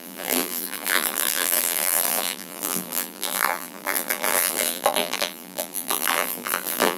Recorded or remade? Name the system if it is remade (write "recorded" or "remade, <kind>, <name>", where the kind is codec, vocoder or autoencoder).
remade, vocoder, BigVGAN v2